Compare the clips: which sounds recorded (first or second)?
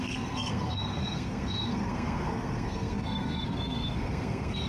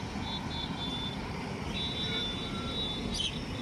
second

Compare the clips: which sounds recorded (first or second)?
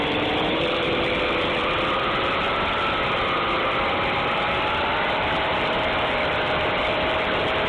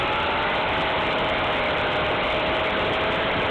second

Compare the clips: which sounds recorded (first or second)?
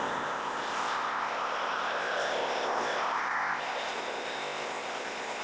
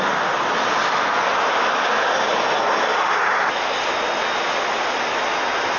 second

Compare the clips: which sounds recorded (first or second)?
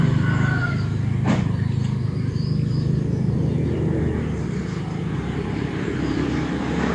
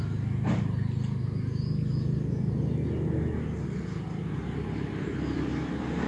second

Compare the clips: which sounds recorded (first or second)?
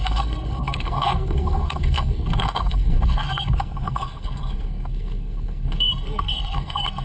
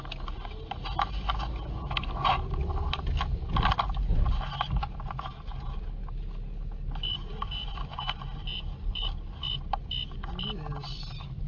second